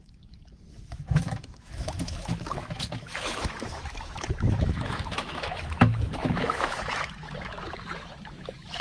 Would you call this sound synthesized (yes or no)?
yes